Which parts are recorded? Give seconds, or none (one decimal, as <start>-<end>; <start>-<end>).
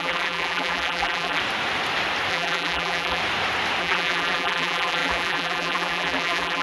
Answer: 1.4-2.3; 3.2-3.8